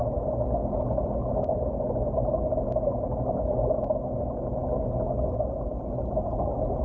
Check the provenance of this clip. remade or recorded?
recorded